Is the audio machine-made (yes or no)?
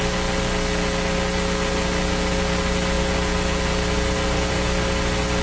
no